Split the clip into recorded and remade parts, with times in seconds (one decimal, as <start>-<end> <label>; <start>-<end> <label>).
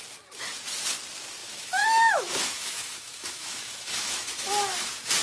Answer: 0.0-1.4 recorded; 1.4-4.5 remade; 4.5-5.2 recorded